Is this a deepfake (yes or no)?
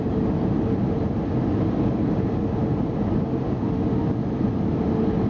no